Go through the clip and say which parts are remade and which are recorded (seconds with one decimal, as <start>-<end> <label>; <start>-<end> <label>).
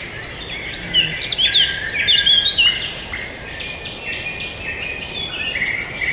0.0-6.1 recorded